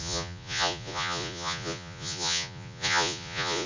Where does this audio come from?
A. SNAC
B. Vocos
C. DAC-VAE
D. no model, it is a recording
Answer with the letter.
B